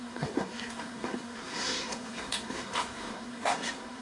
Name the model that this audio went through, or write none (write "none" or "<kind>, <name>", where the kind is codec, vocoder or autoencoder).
codec, SNAC